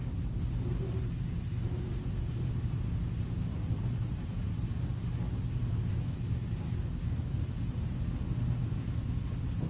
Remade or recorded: recorded